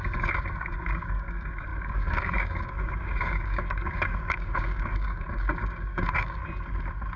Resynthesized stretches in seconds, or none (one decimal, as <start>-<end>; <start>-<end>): 0.0-6.4